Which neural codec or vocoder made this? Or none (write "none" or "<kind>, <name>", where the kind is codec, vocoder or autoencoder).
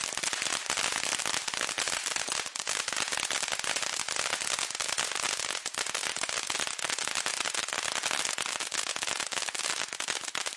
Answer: none